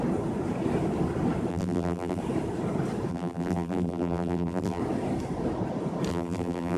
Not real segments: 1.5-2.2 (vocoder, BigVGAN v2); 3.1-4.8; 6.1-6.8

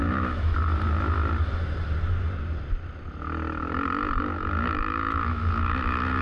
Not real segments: 0.0-0.5 (autoencoder, DAC-VAE); 4.2-6.2